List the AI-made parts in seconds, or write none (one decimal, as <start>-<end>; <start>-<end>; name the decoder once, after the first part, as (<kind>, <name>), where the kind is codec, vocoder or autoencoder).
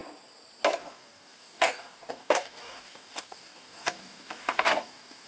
0.8-5.3 (codec, DAC)